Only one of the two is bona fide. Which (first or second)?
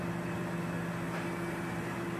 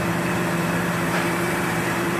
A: first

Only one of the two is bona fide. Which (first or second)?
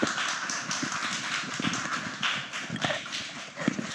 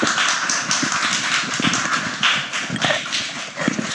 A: second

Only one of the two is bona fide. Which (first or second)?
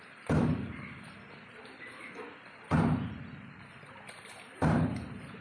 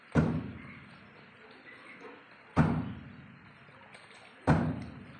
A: second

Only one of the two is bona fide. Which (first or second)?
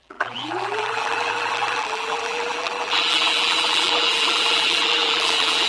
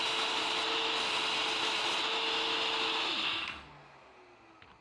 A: second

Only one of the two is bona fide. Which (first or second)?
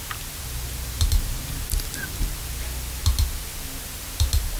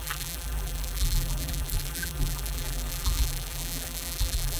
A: first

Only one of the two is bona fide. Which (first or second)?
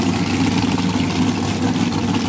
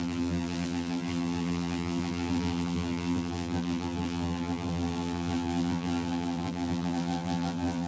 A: first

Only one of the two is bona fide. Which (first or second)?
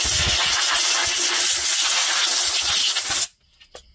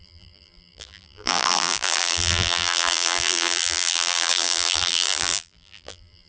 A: first